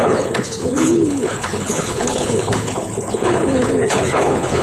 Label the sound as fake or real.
fake